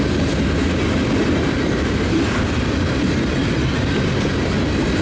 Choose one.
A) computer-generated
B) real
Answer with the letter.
B